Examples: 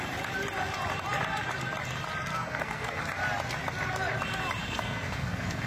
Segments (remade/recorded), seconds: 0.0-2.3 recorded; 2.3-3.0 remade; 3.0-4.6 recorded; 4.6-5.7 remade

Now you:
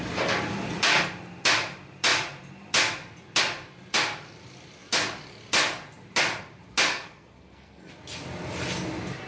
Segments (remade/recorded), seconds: 0.0-6.9 recorded; 6.9-7.9 remade; 7.9-9.3 recorded